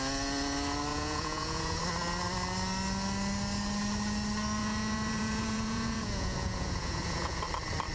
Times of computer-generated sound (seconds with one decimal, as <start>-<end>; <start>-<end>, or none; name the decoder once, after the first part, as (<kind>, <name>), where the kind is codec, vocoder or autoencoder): 0.9-1.8 (vocoder, Vocos); 4.6-7.4